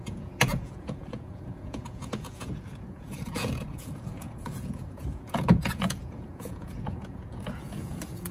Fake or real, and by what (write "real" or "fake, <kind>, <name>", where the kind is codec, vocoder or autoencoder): fake, vocoder, Vocos